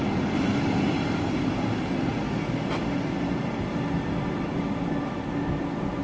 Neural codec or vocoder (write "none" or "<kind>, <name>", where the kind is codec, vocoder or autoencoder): none